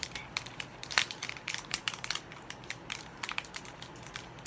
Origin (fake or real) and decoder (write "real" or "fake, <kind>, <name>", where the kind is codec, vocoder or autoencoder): fake, vocoder, BigVGAN v2